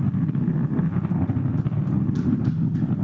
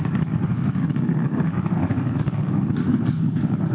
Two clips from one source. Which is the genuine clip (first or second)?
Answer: first